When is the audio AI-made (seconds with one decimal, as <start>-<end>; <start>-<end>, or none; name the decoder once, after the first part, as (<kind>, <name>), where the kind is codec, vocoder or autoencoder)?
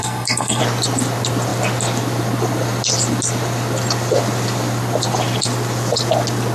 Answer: 0.0-0.6 (codec, SNAC)